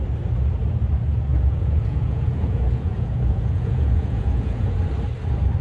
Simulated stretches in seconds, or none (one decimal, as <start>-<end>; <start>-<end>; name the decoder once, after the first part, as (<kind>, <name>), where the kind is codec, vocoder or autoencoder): 1.3-4.7 (vocoder, Vocos)